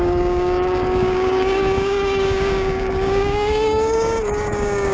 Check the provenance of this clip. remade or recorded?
remade